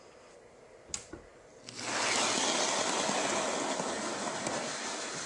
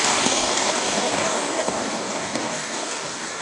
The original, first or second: first